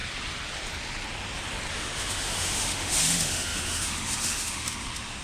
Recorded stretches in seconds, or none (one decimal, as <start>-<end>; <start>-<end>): 0.0-1.7